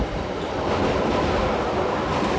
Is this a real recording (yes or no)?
yes